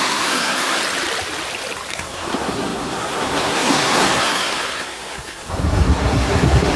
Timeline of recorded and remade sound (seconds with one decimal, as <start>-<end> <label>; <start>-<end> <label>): 0.0-0.8 remade; 0.8-1.9 recorded; 1.9-6.8 remade

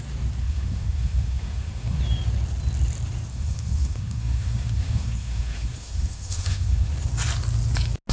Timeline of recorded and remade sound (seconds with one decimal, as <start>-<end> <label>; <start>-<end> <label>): 0.0-0.4 recorded; 0.4-2.0 remade; 2.0-3.3 recorded; 3.3-6.9 remade; 6.9-8.1 recorded